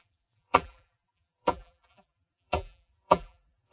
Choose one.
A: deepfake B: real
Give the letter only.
A